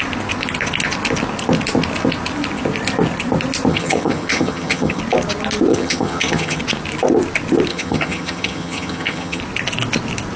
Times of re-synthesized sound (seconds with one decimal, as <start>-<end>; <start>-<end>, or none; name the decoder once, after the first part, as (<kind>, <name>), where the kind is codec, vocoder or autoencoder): 3.7-5.0 (vocoder, HiFi-GAN); 5.7-6.6; 7.7-9.4